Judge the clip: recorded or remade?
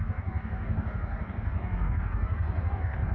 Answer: remade